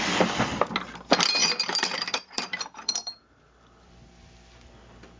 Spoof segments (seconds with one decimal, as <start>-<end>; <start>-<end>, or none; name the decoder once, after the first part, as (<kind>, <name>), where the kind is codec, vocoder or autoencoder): 1.4-3.2 (vocoder, BigVGAN v2)